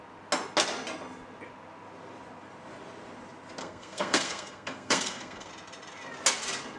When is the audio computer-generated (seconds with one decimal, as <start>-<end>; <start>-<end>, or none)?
3.6-5.5